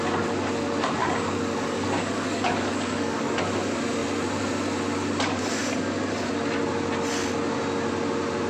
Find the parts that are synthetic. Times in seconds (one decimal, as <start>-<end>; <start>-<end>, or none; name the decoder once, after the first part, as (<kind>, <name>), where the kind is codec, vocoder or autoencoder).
1.0-3.4 (codec, DAC)